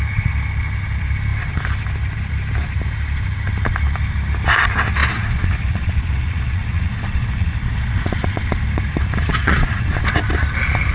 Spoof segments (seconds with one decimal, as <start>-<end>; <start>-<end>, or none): 5.0-8.6; 9.3-10.0

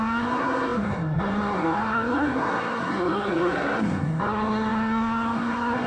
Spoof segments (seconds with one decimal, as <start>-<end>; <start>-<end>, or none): 0.0-5.9

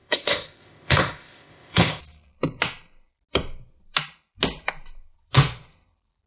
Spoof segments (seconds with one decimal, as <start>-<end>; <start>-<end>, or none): 0.0-2.0

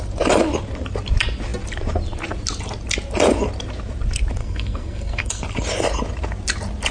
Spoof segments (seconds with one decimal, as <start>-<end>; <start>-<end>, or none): 4.4-5.4

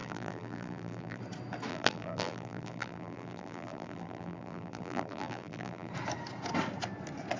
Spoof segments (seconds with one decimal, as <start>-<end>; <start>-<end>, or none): 0.0-1.2; 1.7-5.9